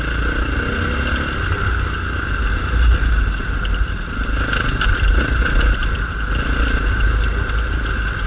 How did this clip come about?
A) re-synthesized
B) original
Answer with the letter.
B